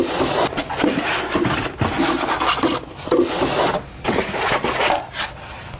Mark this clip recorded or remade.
recorded